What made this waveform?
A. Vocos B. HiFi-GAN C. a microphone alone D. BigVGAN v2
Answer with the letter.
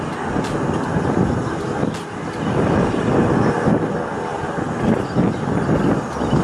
C